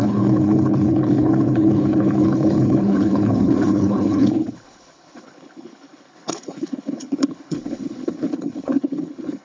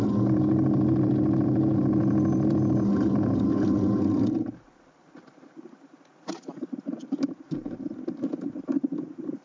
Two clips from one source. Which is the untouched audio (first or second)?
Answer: second